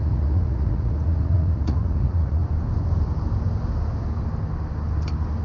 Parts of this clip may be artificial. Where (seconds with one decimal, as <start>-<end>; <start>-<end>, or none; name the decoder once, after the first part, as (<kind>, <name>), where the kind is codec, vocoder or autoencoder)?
0.0-2.4 (vocoder, Vocos)